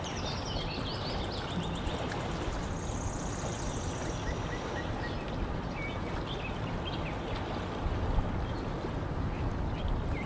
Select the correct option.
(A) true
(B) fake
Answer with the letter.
A